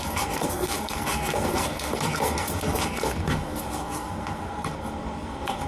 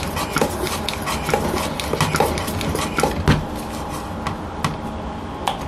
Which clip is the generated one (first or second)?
first